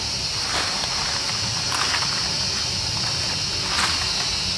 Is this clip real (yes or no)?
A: yes